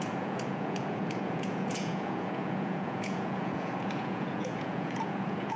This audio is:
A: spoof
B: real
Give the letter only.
A